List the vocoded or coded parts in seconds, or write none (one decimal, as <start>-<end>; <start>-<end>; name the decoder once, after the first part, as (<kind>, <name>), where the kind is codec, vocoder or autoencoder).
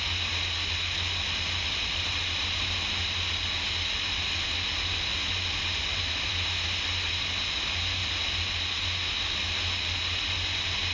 none